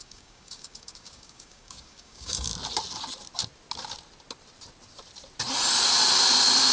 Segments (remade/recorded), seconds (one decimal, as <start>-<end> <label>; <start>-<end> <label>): 0.0-2.5 remade; 2.5-6.7 recorded